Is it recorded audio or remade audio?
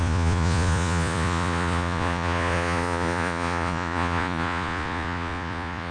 remade